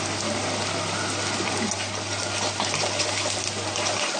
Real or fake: real